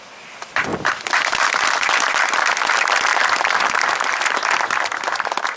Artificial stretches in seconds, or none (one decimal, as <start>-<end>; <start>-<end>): none